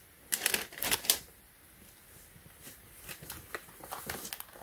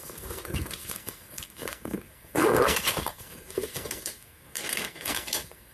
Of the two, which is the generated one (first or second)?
second